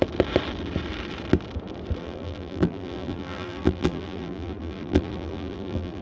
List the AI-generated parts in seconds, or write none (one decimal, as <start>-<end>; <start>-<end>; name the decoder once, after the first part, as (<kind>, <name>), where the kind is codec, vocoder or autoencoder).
2.0-6.0 (vocoder, BigVGAN v2)